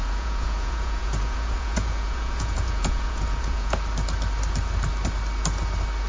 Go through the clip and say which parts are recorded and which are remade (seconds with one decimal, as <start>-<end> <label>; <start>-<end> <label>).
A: 0.0-3.7 remade; 3.7-6.1 recorded